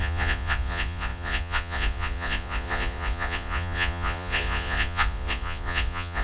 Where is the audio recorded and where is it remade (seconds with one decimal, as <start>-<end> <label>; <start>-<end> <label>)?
0.0-6.2 remade